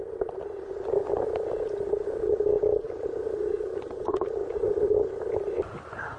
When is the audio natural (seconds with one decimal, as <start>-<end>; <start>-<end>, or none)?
0.0-6.2